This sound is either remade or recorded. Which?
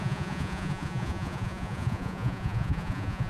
remade